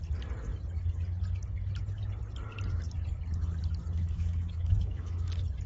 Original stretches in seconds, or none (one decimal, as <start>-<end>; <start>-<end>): 0.0-4.0; 5.3-5.7